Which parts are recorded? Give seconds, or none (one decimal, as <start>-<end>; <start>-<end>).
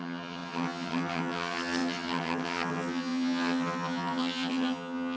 none